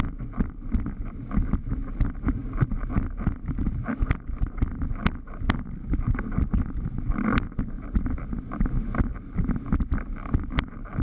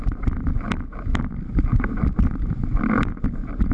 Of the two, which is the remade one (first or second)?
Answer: second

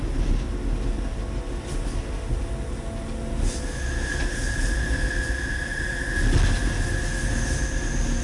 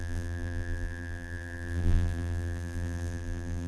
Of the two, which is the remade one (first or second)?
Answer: second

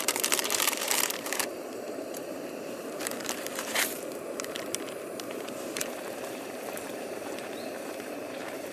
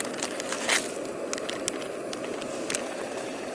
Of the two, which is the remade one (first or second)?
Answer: first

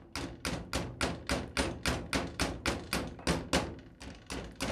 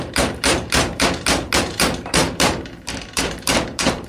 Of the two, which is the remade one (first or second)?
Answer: second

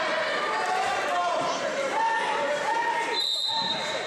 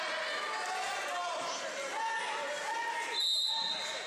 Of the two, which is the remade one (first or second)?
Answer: first